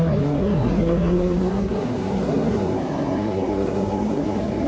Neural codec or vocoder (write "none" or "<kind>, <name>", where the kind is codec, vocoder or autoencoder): codec, SNAC